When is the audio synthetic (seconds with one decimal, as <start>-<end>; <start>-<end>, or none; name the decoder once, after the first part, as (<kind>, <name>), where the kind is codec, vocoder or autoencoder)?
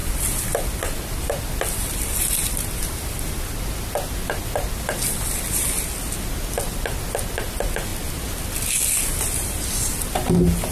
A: 0.0-3.3 (vocoder, BigVGAN v2)